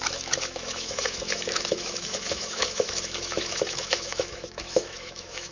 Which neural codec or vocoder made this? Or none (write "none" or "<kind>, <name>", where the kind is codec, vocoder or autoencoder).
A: autoencoder, DAC-VAE